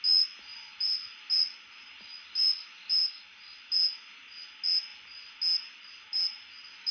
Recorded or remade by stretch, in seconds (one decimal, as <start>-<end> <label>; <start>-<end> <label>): 0.0-6.9 recorded